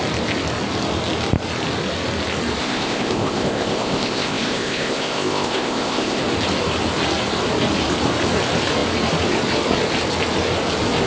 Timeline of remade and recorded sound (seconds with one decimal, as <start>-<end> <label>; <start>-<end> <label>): 0.0-2.6 recorded; 2.6-6.2 remade; 6.2-11.1 recorded